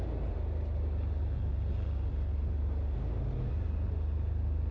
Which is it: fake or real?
real